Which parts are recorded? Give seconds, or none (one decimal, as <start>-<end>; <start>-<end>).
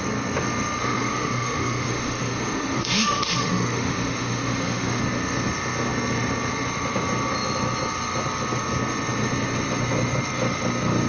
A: 0.0-0.8; 5.0-11.1